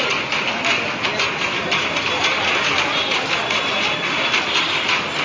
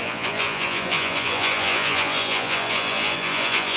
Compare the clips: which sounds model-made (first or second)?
second